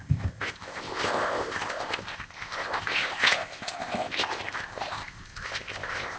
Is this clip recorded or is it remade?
remade